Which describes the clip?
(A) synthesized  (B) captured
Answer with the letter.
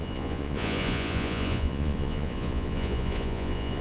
A